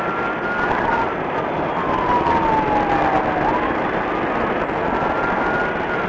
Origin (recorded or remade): recorded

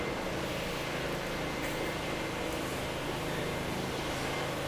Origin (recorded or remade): recorded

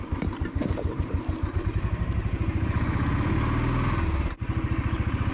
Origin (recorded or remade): recorded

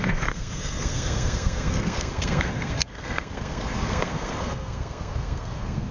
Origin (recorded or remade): remade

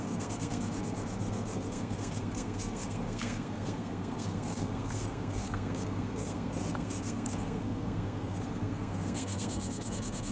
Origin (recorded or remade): remade